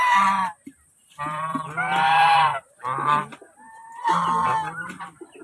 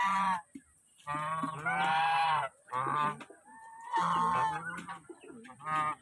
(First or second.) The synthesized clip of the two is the first